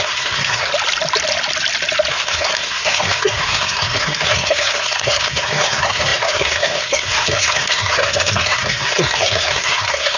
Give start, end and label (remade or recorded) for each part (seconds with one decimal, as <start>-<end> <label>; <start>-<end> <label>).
0.0-0.7 remade; 0.7-2.1 recorded; 2.1-10.2 remade